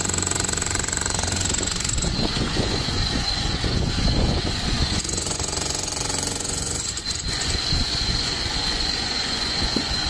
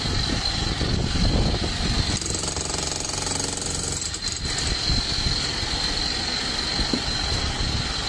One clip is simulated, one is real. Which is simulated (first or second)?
first